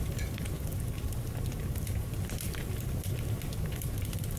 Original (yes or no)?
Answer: yes